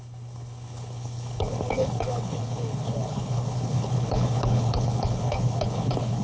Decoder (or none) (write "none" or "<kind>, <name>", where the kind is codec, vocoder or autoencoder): codec, HILCodec